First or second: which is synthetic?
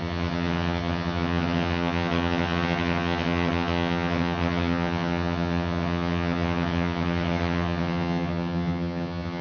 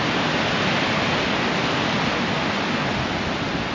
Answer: first